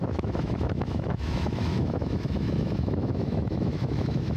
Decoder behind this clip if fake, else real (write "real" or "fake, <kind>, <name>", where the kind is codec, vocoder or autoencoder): fake, autoencoder, DAC-VAE